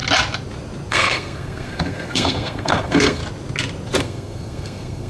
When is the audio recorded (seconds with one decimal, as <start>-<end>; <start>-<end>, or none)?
0.0-0.9; 3.2-4.0